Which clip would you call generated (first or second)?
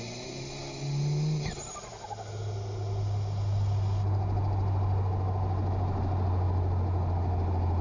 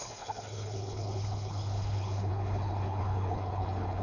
second